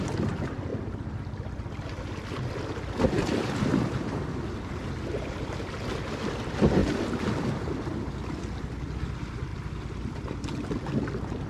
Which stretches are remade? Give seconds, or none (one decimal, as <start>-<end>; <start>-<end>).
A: none

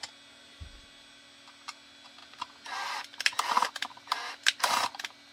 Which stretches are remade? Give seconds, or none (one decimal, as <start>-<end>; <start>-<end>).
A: none

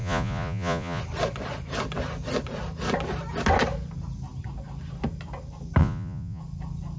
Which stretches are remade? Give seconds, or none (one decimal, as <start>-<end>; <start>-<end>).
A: 0.0-1.0; 5.8-6.4

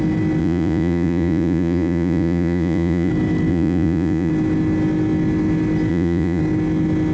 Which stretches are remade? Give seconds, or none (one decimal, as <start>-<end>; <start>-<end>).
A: 0.4-3.1; 3.5-4.3; 5.9-6.4

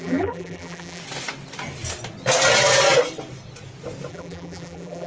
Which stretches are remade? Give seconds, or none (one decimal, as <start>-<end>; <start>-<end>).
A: 0.0-1.0; 4.1-5.1

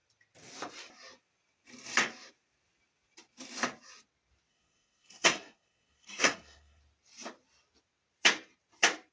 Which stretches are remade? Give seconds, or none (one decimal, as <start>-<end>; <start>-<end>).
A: 4.5-6.8